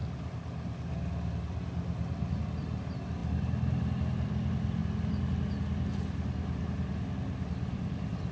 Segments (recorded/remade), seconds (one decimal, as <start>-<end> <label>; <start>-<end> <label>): 0.0-4.8 remade; 4.8-5.9 recorded; 5.9-8.3 remade